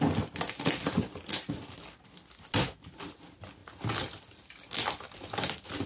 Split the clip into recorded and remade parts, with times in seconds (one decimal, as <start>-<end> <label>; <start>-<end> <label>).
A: 0.0-5.9 recorded